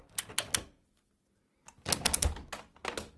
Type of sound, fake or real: real